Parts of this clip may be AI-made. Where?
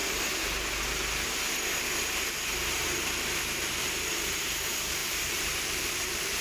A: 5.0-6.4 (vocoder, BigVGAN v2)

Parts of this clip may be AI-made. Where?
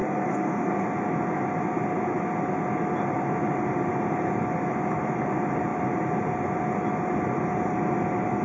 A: 0.0-0.7 (codec, SNAC)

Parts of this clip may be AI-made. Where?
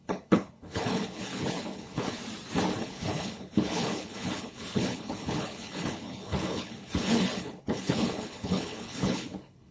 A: 0.0-2.2 (codec, HILCodec); 2.8-9.7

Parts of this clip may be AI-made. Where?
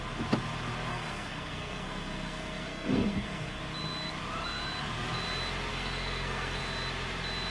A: 0.9-3.6 (codec, SNAC); 5.7-6.6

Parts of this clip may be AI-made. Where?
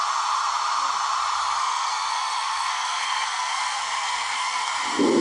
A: 1.6-4.7 (codec, SNAC)